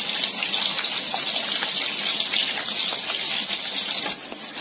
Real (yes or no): yes